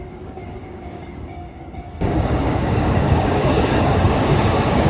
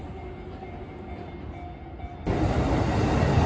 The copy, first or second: first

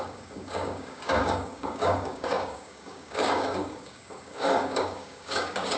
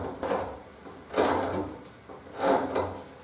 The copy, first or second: first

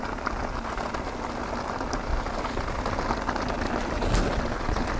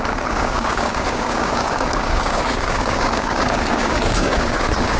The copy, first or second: second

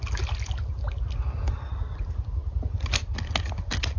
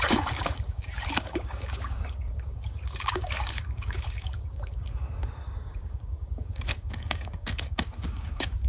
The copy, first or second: second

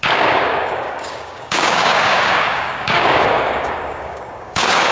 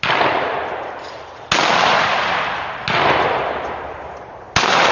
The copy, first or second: first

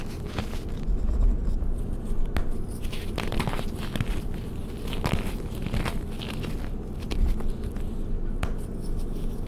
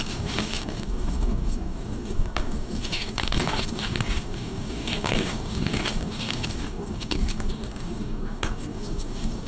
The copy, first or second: second